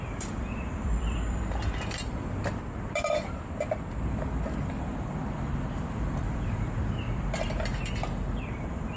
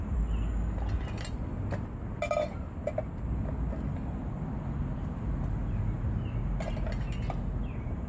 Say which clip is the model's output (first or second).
first